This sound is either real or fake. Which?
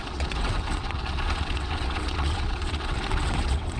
fake